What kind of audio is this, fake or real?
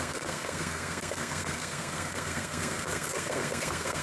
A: fake